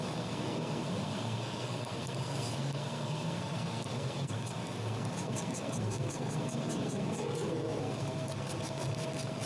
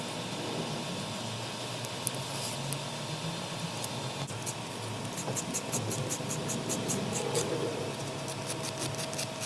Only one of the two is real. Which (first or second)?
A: second